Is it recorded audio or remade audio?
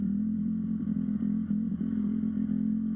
remade